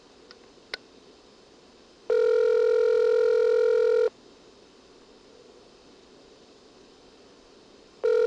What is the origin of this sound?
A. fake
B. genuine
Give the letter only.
B